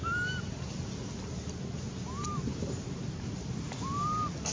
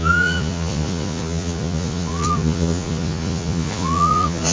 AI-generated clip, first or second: second